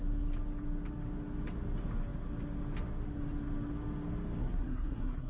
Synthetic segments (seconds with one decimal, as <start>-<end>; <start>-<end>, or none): 4.4-5.3